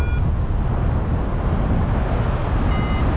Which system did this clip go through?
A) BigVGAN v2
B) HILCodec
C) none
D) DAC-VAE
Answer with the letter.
C